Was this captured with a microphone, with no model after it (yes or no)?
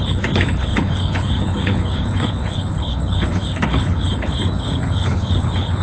no